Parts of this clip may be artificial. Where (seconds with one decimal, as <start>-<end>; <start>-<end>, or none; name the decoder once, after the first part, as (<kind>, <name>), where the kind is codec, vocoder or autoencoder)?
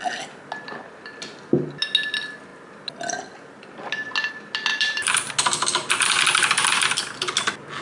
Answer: 4.7-5.3 (vocoder, BigVGAN v2)